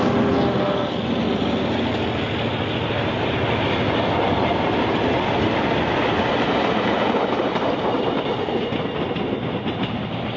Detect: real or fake real